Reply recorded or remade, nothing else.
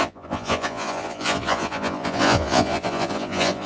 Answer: remade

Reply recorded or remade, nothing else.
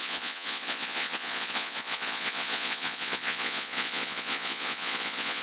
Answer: remade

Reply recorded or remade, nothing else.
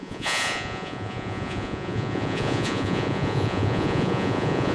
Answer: remade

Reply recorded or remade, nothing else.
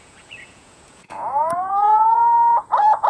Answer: remade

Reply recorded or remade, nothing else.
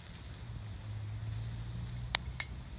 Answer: recorded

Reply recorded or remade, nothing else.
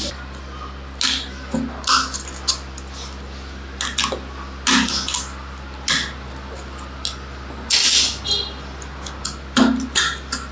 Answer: recorded